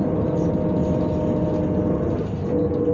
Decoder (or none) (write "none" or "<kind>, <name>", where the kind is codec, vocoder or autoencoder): none